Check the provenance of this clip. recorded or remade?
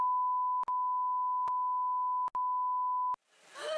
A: recorded